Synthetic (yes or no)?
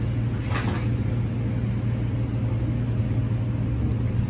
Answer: no